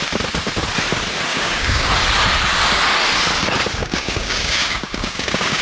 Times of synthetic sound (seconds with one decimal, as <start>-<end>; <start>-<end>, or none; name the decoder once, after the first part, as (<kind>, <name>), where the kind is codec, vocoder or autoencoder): 1.3-1.9 (codec, DAC); 3.8-5.6